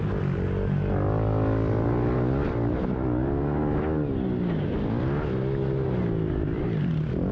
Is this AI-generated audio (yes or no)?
no